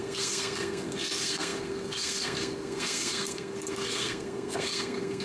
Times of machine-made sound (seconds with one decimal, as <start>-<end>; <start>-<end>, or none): 0.0-5.2